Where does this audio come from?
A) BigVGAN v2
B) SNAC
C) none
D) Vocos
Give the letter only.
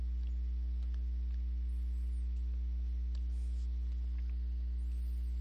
C